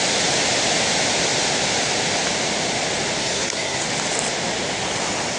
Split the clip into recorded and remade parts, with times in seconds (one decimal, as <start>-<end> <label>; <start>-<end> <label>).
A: 0.0-3.2 recorded; 3.2-3.8 remade; 3.8-5.4 recorded